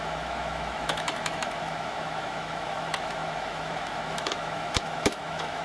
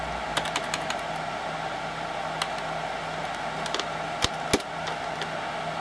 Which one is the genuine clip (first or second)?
second